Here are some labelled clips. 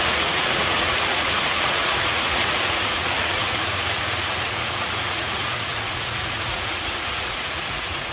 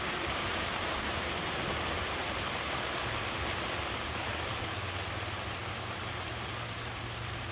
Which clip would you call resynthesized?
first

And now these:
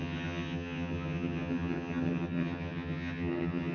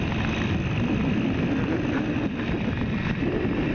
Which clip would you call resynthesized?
first